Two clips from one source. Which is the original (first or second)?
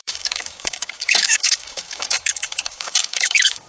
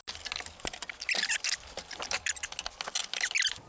second